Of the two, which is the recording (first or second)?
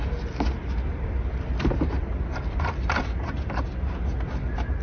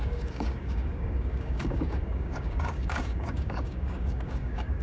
first